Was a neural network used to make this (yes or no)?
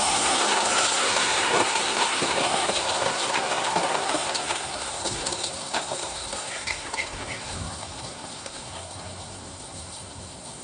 yes